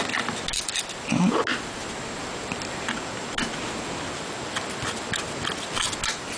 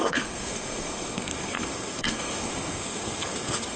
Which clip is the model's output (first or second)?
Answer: second